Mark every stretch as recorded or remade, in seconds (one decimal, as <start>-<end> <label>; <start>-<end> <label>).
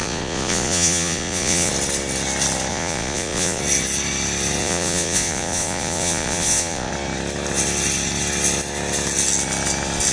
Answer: 0.0-1.7 remade; 1.7-2.7 recorded; 2.7-3.6 remade; 3.6-4.6 recorded; 4.6-6.9 remade; 6.9-10.1 recorded